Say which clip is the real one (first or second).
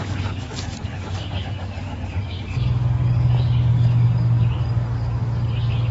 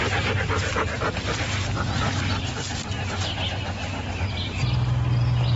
second